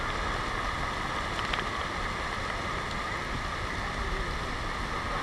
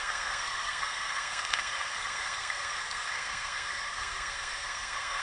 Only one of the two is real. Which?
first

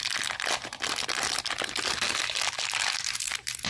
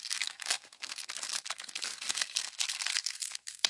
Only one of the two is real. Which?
first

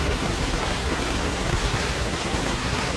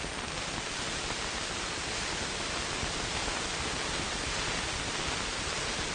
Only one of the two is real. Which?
second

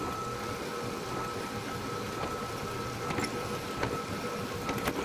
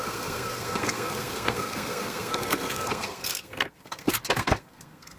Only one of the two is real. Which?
first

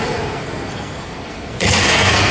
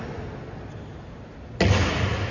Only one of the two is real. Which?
second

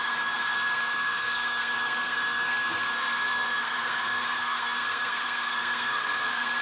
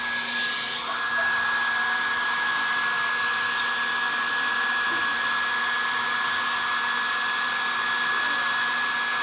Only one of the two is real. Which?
second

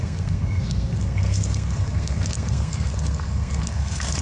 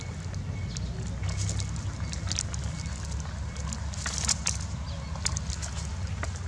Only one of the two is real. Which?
second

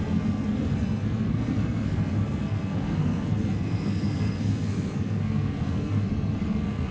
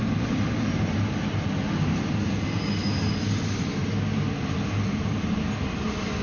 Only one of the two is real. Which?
second